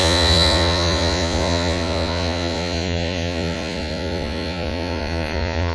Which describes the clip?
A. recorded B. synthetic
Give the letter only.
B